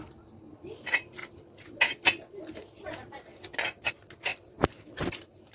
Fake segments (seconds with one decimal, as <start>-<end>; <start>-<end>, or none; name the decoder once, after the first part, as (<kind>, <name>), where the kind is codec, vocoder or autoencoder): 4.3-5.5 (vocoder, BigVGAN v2)